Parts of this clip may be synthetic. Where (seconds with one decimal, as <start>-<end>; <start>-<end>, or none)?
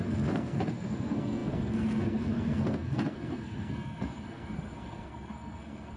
0.0-6.0